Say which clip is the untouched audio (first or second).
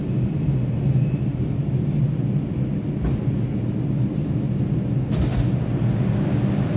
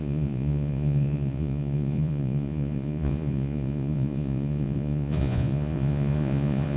first